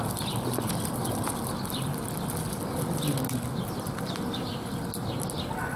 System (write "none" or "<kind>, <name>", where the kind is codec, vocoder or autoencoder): none